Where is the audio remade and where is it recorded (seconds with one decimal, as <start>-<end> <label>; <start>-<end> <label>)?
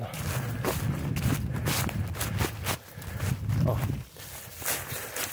0.0-5.3 recorded